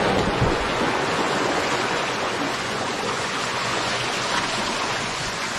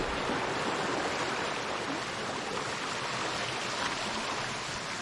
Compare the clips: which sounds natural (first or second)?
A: second